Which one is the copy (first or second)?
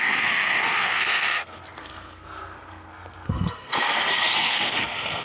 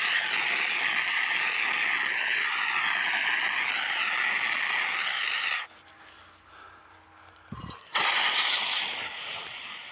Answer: first